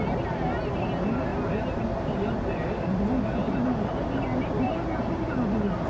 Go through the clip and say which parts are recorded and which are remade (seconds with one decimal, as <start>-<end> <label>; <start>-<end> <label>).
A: 0.0-5.9 recorded

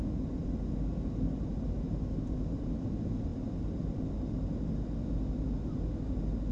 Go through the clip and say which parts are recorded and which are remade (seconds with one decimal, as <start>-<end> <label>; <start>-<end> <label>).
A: 0.0-6.5 recorded

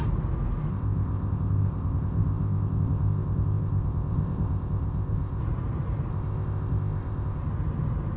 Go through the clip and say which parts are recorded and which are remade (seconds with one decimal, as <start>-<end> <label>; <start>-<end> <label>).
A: 0.0-0.7 recorded; 0.7-5.4 remade; 5.4-6.1 recorded; 6.1-7.4 remade; 7.4-8.2 recorded